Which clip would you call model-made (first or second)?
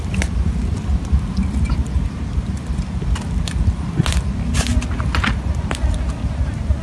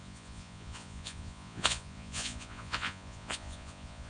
second